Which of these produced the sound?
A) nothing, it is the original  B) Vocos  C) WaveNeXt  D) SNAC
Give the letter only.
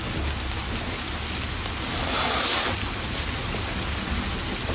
A